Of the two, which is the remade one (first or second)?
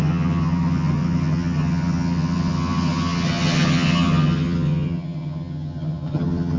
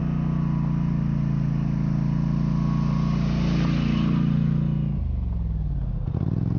first